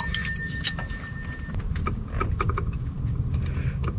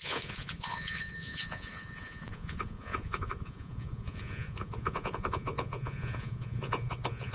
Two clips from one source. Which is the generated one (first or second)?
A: second